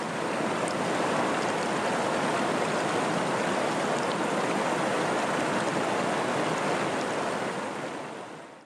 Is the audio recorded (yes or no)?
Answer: yes